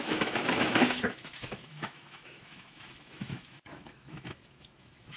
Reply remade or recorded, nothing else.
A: remade